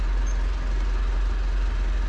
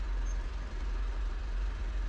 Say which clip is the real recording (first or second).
first